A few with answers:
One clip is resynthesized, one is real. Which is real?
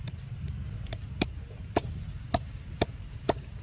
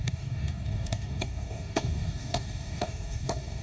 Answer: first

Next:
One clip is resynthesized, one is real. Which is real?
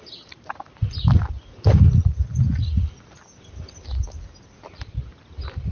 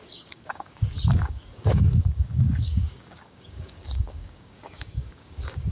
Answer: first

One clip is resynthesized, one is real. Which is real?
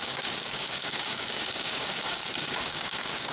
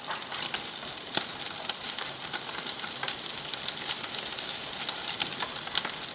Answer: second